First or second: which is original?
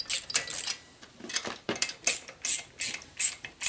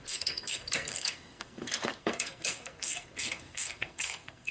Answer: first